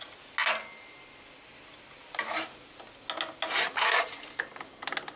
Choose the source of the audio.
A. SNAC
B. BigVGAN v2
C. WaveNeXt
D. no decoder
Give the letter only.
D